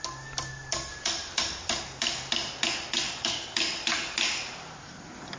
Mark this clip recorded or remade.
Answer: recorded